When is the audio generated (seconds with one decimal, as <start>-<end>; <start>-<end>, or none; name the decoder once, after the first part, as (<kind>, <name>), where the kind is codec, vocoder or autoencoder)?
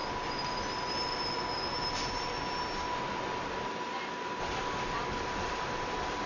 none